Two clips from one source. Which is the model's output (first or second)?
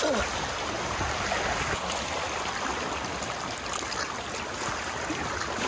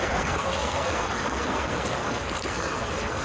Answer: second